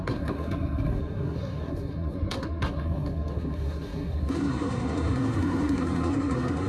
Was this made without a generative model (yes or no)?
no